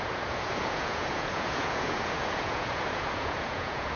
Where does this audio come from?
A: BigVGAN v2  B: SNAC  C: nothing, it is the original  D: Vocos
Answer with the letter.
D